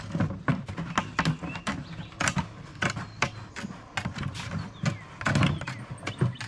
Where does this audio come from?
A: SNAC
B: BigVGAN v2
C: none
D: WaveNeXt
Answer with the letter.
C